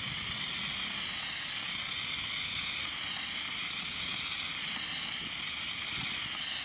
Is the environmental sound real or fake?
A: real